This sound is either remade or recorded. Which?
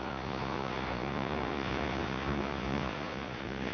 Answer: remade